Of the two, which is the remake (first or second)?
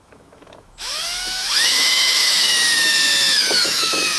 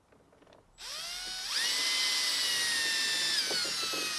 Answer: first